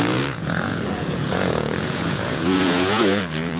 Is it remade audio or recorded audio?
remade